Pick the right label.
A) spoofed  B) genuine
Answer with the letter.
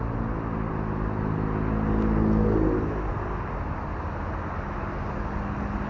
B